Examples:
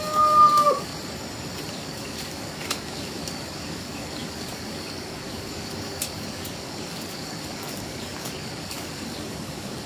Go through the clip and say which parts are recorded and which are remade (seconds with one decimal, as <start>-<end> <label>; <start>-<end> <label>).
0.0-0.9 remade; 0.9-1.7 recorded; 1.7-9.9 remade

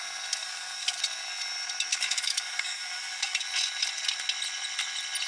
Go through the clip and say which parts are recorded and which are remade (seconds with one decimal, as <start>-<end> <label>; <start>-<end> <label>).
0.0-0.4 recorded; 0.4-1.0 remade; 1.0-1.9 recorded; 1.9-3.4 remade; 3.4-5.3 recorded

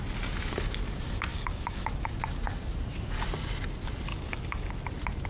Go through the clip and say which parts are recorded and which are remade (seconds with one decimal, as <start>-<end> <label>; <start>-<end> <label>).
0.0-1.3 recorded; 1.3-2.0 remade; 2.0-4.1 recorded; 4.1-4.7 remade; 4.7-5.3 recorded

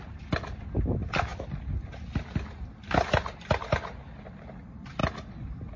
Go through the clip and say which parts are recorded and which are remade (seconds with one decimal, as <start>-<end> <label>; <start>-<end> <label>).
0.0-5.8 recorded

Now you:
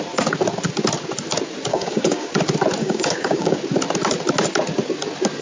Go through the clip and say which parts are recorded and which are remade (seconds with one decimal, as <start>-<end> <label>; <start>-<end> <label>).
0.0-1.7 recorded; 1.7-2.3 remade; 2.3-2.8 recorded; 2.8-3.6 remade; 3.6-5.4 recorded

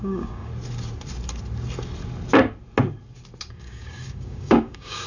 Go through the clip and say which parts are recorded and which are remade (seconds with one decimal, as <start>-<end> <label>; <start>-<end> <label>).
0.0-0.5 remade; 0.5-3.5 recorded; 3.5-5.1 remade